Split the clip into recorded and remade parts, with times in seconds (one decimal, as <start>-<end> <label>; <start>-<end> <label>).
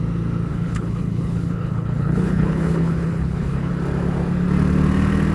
0.0-0.5 recorded; 0.5-3.7 remade; 3.7-5.3 recorded